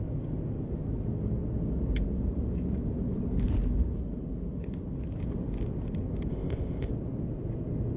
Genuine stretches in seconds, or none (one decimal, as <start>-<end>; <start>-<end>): 0.0-6.3; 6.9-8.0